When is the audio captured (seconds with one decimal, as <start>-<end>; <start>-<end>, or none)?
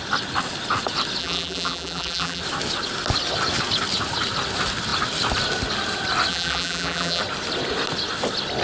0.0-1.2; 2.4-6.3; 7.2-8.6